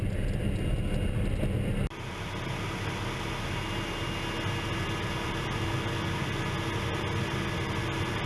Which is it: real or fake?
real